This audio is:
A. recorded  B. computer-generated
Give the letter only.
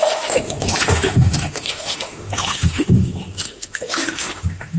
B